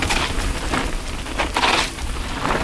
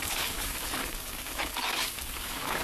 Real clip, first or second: first